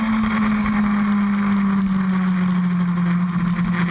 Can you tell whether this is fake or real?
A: real